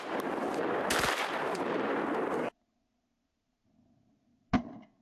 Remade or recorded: recorded